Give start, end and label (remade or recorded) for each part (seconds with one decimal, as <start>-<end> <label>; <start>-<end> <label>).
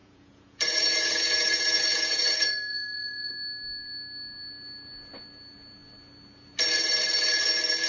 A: 0.0-3.3 remade; 3.3-7.9 recorded